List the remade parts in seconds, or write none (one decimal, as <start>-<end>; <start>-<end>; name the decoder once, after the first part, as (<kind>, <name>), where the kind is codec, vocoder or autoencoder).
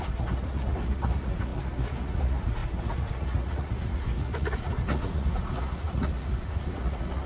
0.0-7.3 (vocoder, Vocos)